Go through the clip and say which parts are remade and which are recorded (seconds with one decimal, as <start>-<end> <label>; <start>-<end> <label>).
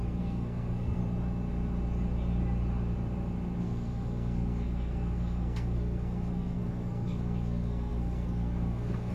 0.0-1.0 remade; 1.0-3.6 recorded; 3.6-9.1 remade